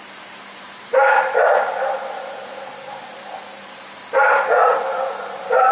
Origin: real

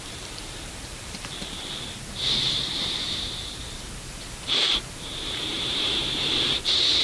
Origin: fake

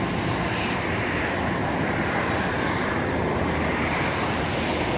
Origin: real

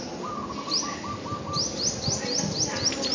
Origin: real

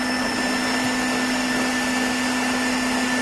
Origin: real